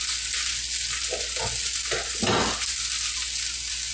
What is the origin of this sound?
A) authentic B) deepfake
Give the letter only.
A